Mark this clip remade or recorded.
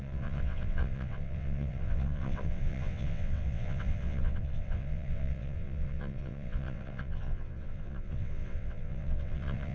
remade